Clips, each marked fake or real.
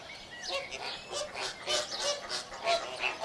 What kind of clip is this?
real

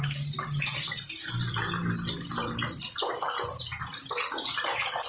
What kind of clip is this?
real